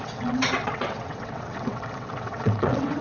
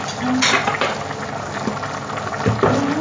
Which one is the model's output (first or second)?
first